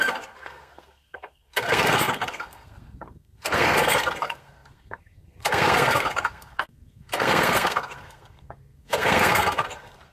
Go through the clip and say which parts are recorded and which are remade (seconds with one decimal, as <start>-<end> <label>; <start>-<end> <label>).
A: 0.0-10.1 remade